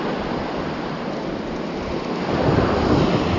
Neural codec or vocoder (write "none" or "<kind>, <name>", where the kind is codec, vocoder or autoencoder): none